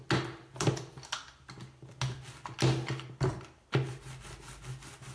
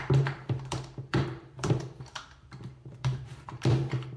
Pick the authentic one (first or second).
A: first